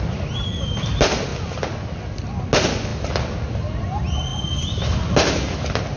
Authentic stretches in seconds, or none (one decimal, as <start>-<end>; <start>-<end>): 0.0-6.0

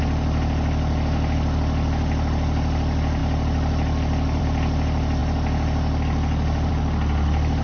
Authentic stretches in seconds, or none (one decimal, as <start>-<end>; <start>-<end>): 0.0-7.6

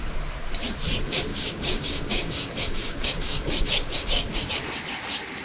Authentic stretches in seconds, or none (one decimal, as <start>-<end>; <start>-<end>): 0.0-1.3; 4.5-5.4